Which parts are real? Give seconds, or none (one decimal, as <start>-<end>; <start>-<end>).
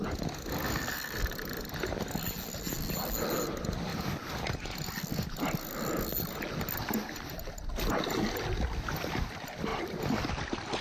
0.0-10.8